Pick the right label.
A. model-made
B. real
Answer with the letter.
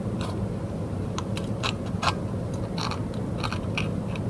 B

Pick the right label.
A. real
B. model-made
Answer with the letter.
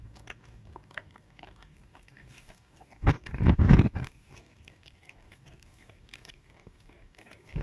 B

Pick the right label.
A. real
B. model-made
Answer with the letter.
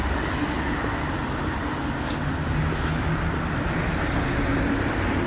A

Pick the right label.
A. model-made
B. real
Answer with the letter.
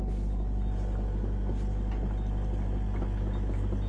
B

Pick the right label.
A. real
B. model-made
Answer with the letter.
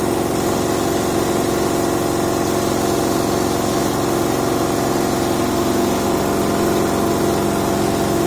A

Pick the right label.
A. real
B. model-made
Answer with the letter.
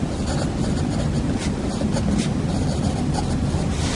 A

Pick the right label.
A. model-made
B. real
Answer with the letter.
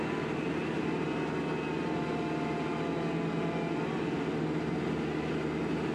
B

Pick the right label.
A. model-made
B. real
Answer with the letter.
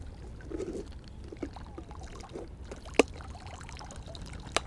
B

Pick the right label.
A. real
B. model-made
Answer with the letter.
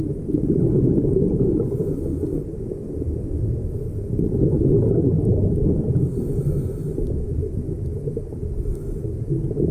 A